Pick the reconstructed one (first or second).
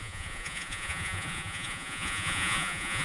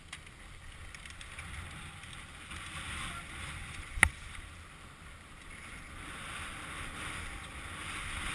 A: first